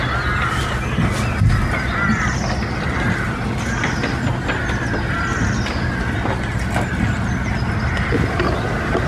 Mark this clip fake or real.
real